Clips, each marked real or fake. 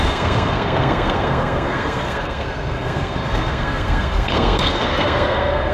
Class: fake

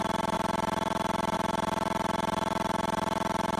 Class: fake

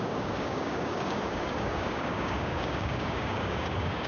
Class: fake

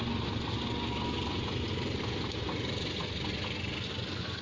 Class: real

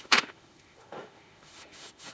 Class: fake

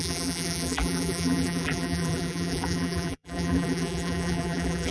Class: fake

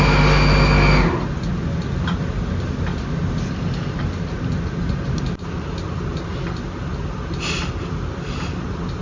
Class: real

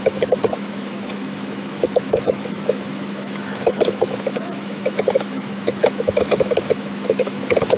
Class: fake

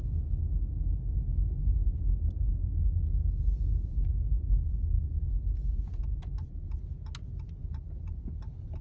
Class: real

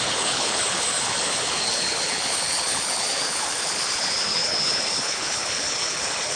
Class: fake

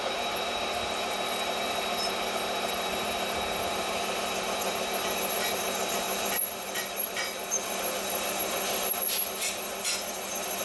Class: fake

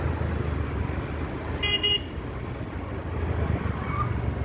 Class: real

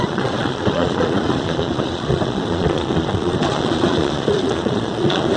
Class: fake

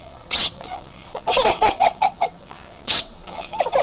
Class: fake